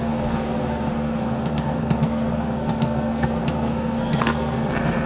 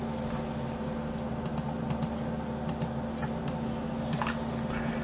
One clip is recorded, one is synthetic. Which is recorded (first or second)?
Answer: second